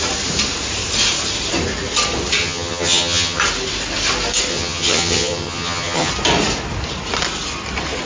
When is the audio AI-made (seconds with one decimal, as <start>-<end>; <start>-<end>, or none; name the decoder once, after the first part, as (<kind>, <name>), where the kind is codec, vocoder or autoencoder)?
2.4-3.4 (vocoder, HiFi-GAN); 4.5-6.1